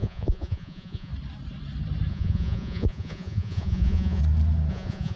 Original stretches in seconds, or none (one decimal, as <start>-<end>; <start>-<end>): 1.1-2.1; 4.2-4.7